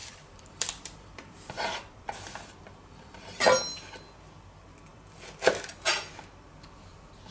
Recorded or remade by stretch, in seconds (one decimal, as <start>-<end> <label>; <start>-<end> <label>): 0.0-3.4 remade; 3.4-4.9 recorded; 4.9-5.7 remade; 5.7-7.3 recorded